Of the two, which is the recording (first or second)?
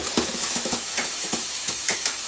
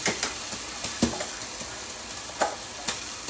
second